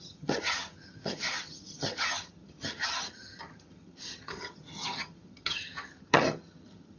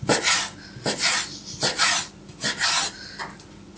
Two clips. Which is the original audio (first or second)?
second